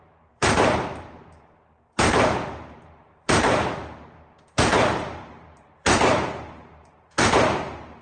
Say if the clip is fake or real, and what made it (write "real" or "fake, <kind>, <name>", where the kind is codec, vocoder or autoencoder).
fake, vocoder, BigVGAN v2